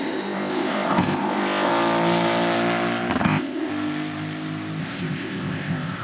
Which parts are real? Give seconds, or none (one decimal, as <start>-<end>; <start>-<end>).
1.7-3.2; 3.7-4.8

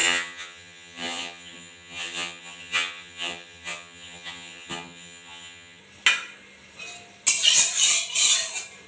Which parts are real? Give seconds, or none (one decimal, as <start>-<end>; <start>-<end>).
5.8-8.9

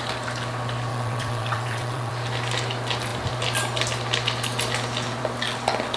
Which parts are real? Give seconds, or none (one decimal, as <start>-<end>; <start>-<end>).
0.0-0.9; 2.1-6.0

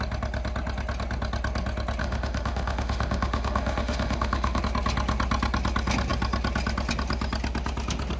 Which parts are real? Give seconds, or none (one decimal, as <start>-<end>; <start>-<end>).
0.0-2.0; 4.6-8.2

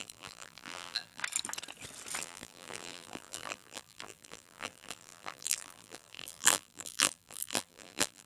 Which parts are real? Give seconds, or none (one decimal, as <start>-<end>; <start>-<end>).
1.2-2.2